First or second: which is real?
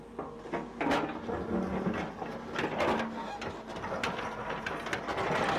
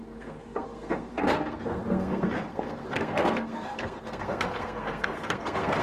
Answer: first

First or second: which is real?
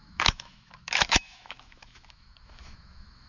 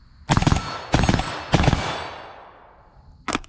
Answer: second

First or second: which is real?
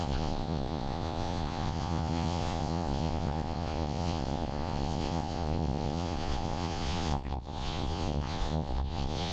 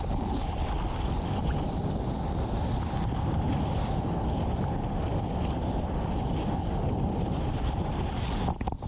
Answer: second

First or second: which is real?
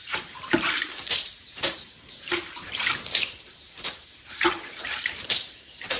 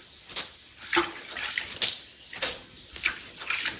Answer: second